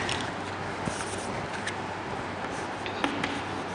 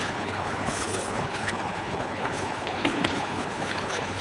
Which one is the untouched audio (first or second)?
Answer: first